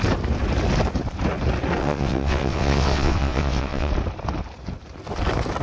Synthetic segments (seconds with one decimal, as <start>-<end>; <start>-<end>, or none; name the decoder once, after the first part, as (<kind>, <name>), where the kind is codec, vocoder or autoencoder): 1.8-3.9 (vocoder, WaveNeXt)